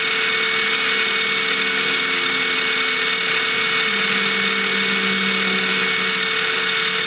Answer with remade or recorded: recorded